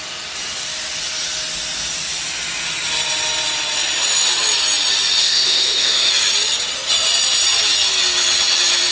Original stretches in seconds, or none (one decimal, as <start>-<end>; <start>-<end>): 0.0-5.2; 6.1-8.9